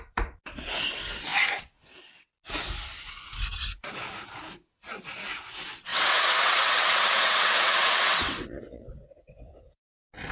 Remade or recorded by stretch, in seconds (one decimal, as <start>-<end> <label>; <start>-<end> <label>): 0.0-5.9 recorded; 5.9-9.8 remade; 9.8-10.3 recorded

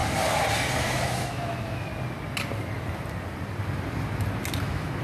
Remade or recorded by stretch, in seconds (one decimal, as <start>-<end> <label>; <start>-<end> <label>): 0.0-0.8 recorded; 0.8-1.9 remade; 1.9-4.6 recorded; 4.6-5.0 remade

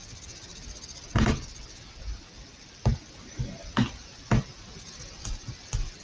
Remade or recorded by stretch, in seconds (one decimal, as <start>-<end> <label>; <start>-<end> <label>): 0.0-6.0 recorded

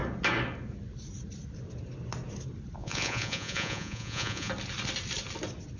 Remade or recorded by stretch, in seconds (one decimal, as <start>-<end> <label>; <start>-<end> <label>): 0.0-2.8 recorded; 2.8-4.5 remade; 4.5-5.8 recorded